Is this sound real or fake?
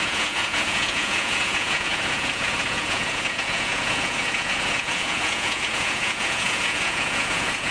fake